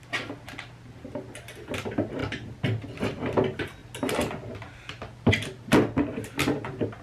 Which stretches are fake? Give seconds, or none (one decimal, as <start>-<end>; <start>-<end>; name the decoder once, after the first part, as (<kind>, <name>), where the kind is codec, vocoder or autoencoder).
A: none